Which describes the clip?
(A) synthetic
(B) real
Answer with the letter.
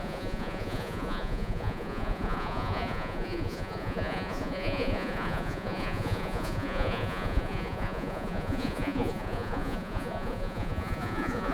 A